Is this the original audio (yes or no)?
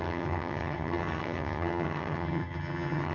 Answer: no